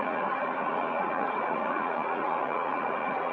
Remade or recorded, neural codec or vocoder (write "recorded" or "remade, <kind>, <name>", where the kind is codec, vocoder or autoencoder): remade, vocoder, Vocos